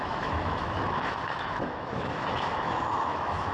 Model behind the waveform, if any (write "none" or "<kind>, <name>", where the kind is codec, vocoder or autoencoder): autoencoder, DAC-VAE